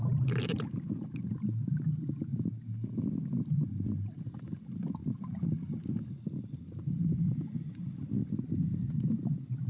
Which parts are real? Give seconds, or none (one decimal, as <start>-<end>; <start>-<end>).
2.3-2.9